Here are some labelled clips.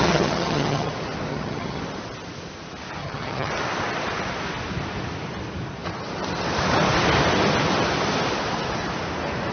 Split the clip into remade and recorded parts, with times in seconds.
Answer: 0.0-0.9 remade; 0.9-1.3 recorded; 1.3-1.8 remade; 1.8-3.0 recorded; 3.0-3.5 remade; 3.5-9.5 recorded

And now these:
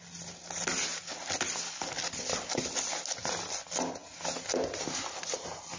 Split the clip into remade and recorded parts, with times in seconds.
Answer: 0.0-5.8 recorded

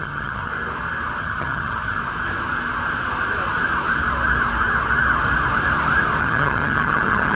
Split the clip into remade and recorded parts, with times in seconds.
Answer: 0.0-0.5 remade; 0.5-1.2 recorded; 1.2-2.0 remade; 2.0-6.2 recorded; 6.2-7.4 remade

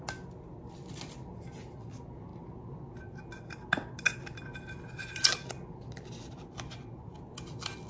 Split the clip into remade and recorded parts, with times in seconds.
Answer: 0.0-7.9 recorded

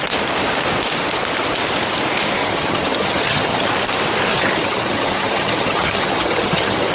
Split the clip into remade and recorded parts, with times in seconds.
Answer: 0.0-2.4 recorded; 2.4-3.7 remade; 3.7-4.3 recorded; 4.3-6.9 remade

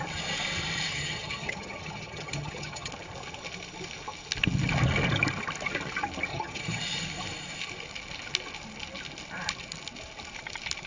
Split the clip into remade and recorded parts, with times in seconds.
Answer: 0.0-0.9 recorded; 0.9-2.9 remade; 2.9-6.3 recorded; 6.3-6.8 remade; 6.8-10.9 recorded

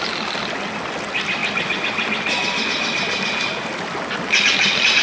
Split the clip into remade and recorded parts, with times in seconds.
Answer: 0.0-5.0 recorded

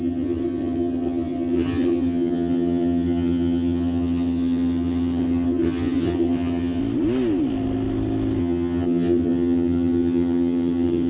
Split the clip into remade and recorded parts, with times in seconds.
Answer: 0.0-6.8 remade; 6.8-8.4 recorded; 8.4-11.1 remade